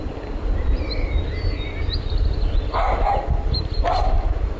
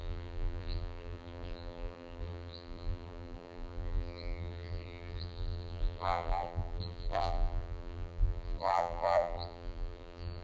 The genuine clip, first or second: first